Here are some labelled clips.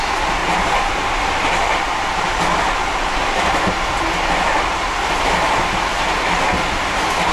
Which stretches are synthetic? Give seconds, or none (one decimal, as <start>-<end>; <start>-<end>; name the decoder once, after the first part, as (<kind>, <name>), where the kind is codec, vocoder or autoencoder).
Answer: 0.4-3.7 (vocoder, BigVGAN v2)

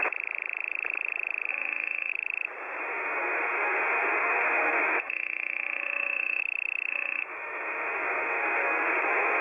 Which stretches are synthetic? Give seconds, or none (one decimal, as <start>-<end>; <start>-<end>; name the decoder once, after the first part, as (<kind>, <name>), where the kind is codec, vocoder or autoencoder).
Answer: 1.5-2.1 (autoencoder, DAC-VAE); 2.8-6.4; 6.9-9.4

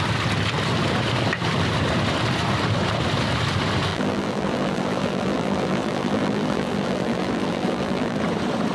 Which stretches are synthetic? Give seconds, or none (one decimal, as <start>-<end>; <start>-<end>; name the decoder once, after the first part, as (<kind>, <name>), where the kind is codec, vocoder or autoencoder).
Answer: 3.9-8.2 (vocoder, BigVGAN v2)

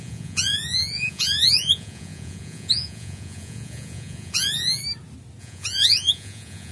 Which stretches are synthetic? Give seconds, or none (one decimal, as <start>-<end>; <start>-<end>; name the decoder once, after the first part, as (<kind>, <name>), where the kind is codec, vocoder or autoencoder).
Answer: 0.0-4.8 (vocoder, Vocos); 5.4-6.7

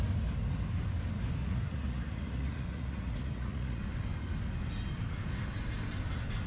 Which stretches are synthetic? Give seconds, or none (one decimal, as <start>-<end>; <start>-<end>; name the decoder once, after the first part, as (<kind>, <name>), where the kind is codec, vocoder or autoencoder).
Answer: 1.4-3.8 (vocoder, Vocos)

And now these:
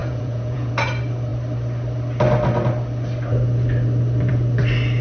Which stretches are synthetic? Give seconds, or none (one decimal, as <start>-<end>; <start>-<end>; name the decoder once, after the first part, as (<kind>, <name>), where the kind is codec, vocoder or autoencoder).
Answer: 0.0-0.7 (vocoder, Vocos)

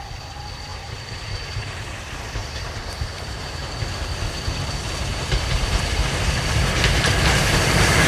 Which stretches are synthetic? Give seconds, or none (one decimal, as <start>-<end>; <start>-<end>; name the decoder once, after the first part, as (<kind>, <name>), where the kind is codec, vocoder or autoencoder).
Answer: 0.7-1.8 (vocoder, BigVGAN v2); 2.4-3.7; 5.1-5.8